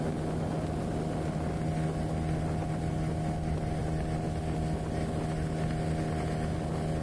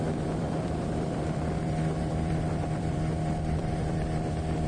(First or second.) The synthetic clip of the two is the second